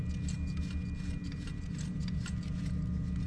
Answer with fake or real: real